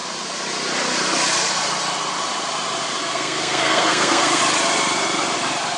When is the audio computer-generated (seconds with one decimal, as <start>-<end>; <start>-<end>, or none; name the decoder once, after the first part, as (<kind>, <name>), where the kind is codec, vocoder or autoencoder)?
3.0-4.4 (codec, SNAC)